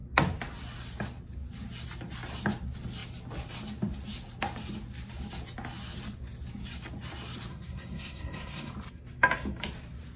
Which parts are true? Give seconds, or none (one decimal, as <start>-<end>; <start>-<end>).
0.0-7.5; 8.7-10.2